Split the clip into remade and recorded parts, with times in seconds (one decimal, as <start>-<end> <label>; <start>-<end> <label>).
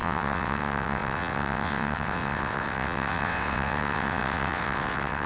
0.0-5.3 remade